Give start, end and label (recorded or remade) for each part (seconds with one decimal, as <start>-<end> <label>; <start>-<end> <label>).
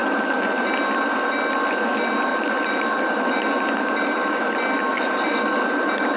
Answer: 0.0-0.6 remade; 0.6-2.3 recorded; 2.3-4.5 remade; 4.5-4.9 recorded; 4.9-6.2 remade